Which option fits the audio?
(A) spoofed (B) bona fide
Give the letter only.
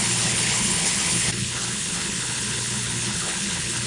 A